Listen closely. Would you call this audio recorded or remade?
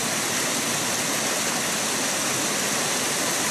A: recorded